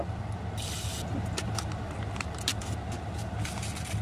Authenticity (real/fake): real